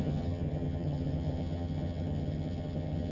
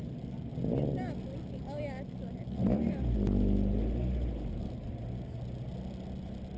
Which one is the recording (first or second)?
second